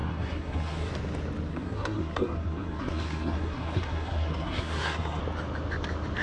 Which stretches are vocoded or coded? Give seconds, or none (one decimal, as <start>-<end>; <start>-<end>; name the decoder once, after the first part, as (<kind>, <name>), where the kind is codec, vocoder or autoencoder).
0.0-0.9 (codec, SNAC); 1.5-5.2